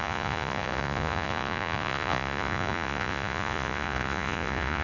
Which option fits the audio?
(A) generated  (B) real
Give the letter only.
A